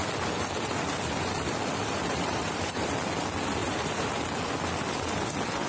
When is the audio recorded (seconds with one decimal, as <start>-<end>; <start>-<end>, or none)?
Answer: 0.0-1.8; 2.9-3.6; 4.1-5.7